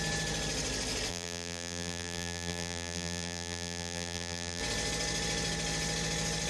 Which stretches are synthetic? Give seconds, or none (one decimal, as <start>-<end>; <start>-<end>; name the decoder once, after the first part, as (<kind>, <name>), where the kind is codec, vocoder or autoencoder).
1.1-4.6 (vocoder, BigVGAN v2)